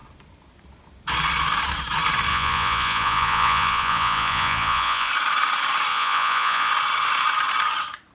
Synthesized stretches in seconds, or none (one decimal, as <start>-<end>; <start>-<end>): 2.3-5.1; 5.9-6.7